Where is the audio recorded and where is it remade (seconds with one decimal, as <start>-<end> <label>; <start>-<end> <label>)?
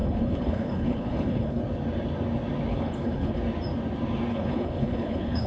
0.0-1.6 remade; 1.6-2.7 recorded; 2.7-3.4 remade; 3.4-4.3 recorded; 4.3-5.5 remade